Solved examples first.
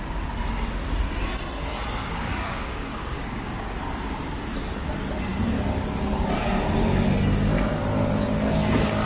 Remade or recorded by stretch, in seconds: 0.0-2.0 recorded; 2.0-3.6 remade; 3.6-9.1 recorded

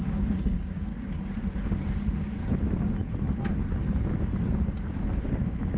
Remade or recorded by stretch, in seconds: 0.0-0.9 remade; 0.9-4.4 recorded; 4.4-5.8 remade

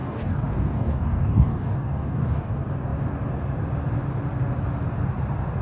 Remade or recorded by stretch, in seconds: 0.0-2.5 remade; 2.5-5.6 recorded

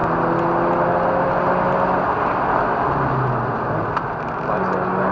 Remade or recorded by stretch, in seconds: 0.0-5.1 recorded